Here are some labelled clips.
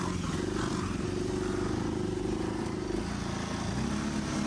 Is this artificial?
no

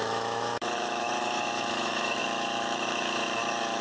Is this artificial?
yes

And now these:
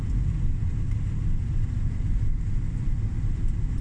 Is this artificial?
no